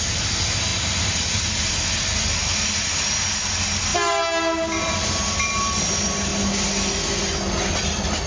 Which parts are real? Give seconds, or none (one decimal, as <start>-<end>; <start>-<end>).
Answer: 0.0-8.3